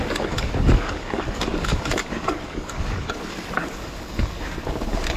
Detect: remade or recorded remade